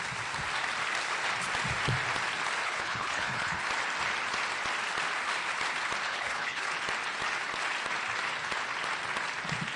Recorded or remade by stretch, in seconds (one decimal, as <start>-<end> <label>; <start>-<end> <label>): 0.0-2.6 recorded; 2.6-3.6 remade; 3.6-6.1 recorded; 6.1-6.7 remade; 6.7-9.8 recorded